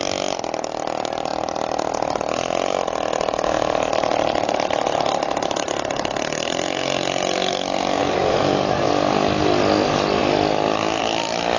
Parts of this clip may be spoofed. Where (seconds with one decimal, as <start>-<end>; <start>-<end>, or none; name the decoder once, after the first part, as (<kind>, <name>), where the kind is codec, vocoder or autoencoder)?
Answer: 8.0-8.9 (vocoder, BigVGAN v2)